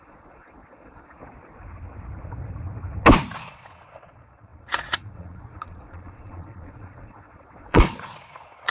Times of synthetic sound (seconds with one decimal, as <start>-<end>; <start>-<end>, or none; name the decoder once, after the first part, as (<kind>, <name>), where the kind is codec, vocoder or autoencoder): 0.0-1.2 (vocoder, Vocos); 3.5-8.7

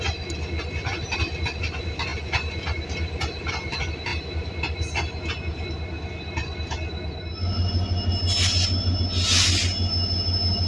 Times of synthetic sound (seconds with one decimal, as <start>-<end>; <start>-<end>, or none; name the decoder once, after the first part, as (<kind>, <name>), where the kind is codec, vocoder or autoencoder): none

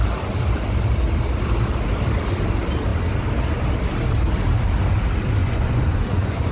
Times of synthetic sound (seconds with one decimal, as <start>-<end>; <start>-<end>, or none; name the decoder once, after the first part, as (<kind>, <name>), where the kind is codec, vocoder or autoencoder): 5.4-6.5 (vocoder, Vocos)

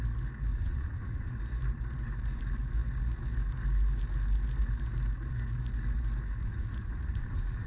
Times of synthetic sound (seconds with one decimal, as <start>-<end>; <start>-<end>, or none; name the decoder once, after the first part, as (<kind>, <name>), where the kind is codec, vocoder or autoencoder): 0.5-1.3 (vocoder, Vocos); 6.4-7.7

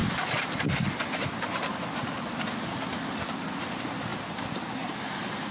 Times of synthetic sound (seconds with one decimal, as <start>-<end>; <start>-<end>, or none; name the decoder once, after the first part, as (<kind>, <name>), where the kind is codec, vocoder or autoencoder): none

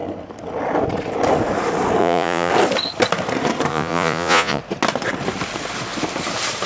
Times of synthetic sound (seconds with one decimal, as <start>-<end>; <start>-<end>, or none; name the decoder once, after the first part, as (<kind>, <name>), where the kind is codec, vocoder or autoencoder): 2.0-2.5 (vocoder, Vocos); 3.7-4.6